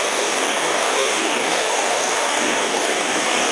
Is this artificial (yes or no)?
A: yes